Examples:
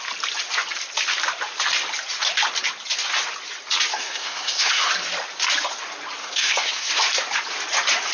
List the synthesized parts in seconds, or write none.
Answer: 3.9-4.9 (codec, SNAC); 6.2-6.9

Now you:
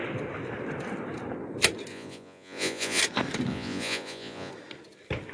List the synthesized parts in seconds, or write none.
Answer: 1.9-3.0 (vocoder, Vocos); 3.5-4.5

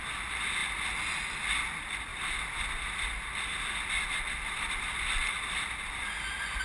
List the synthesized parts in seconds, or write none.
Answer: 2.1-3.3 (vocoder, BigVGAN v2)